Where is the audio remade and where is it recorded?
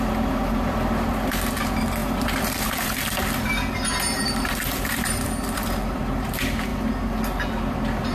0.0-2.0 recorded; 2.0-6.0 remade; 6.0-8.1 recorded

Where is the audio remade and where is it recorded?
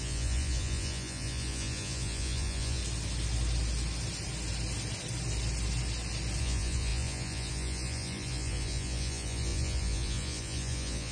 0.0-2.8 remade; 2.8-6.4 recorded; 6.4-11.1 remade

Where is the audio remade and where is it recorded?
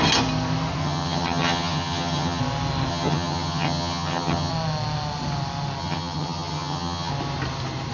0.0-0.8 recorded; 0.8-2.4 remade; 2.4-2.9 recorded; 2.9-4.5 remade; 4.5-5.8 recorded; 5.8-7.1 remade; 7.1-7.9 recorded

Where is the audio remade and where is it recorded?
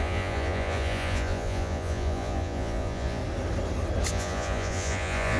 0.0-3.2 remade; 3.2-4.1 recorded; 4.1-5.4 remade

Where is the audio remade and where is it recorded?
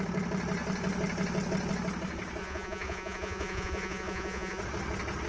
0.0-2.4 recorded; 2.4-4.6 remade; 4.6-5.3 recorded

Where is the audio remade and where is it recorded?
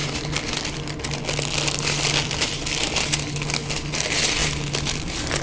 0.0-5.4 recorded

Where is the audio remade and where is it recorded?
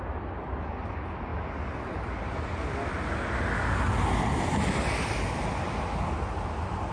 0.0-6.9 recorded